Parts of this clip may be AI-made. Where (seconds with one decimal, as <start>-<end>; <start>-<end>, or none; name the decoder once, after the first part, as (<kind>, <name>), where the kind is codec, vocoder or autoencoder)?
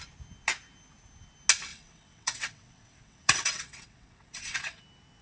1.7-4.8 (vocoder, WaveNeXt)